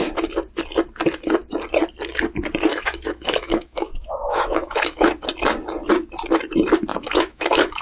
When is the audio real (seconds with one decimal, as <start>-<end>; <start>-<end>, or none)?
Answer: 0.0-2.7; 5.1-6.9